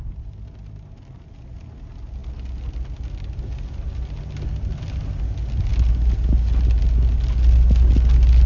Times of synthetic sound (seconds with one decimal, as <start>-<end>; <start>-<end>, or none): none